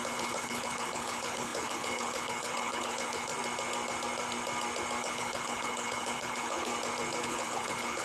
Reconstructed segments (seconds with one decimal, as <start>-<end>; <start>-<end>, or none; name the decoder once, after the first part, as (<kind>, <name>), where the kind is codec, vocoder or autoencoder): 0.0-3.3 (codec, HILCodec); 5.0-6.7; 7.2-8.0